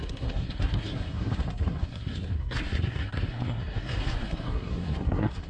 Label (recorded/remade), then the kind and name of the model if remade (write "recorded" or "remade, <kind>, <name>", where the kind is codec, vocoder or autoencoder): remade, codec, SNAC